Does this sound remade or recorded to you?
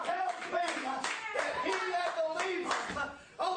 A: recorded